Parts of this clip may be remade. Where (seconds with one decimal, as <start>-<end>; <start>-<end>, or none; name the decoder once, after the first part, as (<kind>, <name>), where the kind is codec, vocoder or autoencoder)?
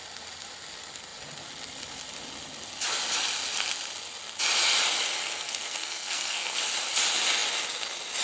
5.2-6.6 (codec, SNAC)